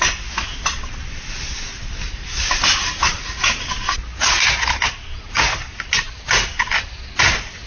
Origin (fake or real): real